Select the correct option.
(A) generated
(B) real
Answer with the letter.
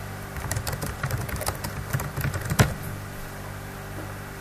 B